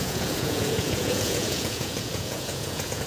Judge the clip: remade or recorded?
remade